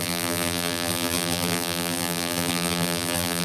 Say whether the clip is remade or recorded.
remade